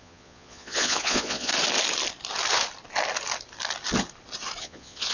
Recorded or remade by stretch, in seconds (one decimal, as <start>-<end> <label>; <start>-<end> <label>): 0.0-1.5 remade; 1.5-4.6 recorded; 4.6-5.1 remade